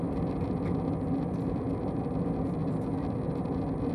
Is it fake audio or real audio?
real